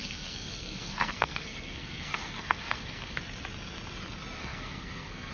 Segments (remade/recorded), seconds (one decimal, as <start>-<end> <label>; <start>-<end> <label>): 0.0-3.2 remade; 3.2-4.4 recorded; 4.4-5.3 remade